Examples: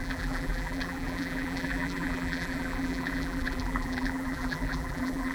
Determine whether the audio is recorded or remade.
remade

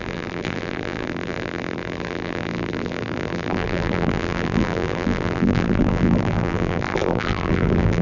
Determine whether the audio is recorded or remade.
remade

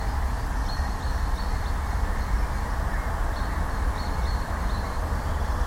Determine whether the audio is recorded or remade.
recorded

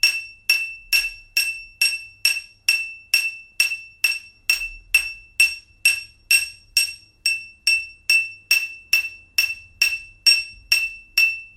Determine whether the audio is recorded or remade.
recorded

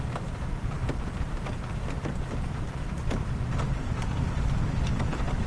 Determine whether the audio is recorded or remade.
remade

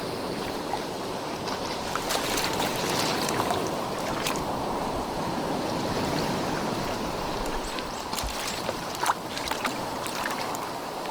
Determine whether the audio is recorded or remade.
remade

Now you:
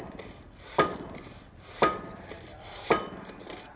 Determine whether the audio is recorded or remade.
remade